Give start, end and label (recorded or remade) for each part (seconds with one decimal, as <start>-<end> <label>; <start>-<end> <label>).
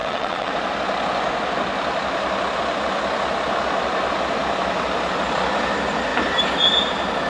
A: 0.0-0.5 remade; 0.5-7.3 recorded